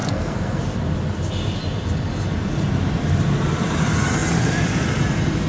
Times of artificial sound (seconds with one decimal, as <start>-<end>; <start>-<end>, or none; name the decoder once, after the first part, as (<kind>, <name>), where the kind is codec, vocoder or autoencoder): 0.0-0.6 (codec, SNAC)